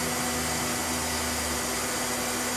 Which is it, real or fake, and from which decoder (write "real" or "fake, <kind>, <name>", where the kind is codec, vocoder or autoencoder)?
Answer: real